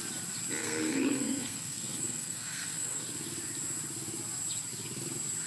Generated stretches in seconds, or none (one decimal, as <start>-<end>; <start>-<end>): 0.6-3.0